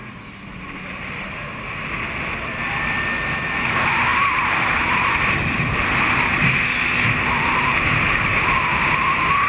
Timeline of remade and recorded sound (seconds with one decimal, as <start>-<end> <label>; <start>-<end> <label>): 0.0-9.5 recorded